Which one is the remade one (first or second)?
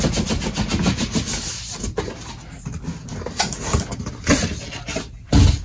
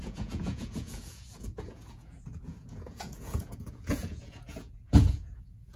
second